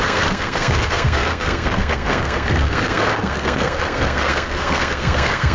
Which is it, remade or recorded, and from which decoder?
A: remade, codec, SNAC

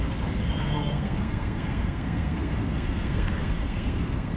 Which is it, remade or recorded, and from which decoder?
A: remade, codec, SNAC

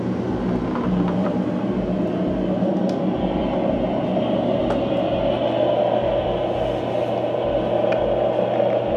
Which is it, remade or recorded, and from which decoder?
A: recorded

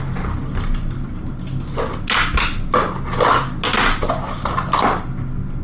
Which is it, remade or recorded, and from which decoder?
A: recorded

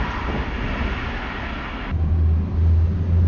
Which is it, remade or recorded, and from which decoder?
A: recorded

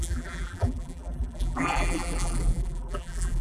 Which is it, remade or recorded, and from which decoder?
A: remade, vocoder, BigVGAN v2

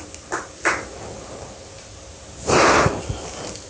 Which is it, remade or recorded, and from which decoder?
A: recorded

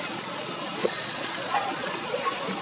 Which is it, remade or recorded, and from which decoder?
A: remade, vocoder, Vocos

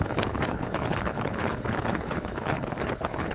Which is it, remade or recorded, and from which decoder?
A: remade, codec, HILCodec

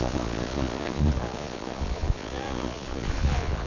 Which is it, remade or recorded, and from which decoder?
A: remade, vocoder, Vocos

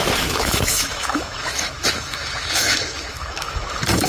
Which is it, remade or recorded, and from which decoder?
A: remade, autoencoder, DAC-VAE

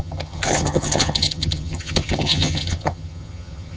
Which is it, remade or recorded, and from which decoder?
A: remade, vocoder, HiFi-GAN